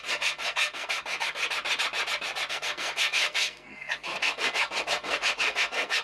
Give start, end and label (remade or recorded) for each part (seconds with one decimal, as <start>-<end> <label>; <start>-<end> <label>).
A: 0.0-1.4 remade; 1.4-2.5 recorded; 2.5-6.0 remade